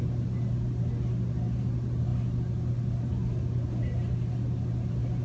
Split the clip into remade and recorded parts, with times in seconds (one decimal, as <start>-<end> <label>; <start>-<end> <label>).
0.0-5.2 recorded